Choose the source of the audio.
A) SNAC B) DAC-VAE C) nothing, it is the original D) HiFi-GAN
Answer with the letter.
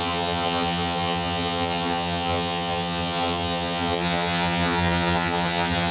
D